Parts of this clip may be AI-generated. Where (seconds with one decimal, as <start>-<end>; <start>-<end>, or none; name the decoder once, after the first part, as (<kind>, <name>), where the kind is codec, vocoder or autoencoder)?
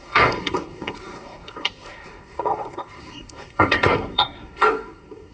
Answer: 0.0-5.3 (codec, SNAC)